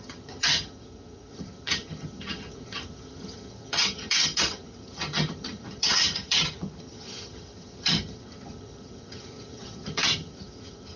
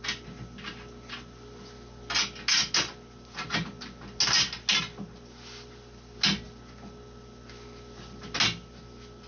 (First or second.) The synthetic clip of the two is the first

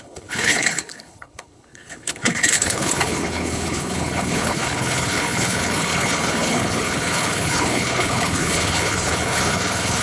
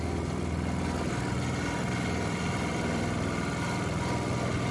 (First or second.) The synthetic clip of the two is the first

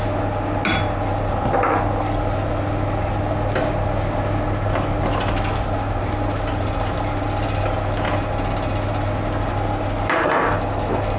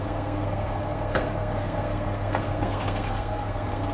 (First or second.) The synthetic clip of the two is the second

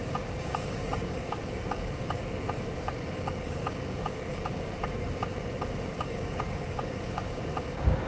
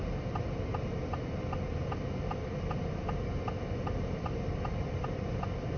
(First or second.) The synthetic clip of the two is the first